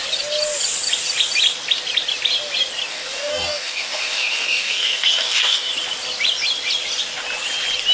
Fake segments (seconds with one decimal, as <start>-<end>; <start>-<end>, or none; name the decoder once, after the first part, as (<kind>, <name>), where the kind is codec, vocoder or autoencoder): 2.9-5.7 (codec, DAC)